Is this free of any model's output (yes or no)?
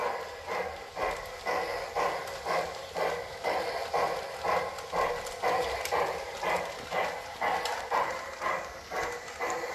yes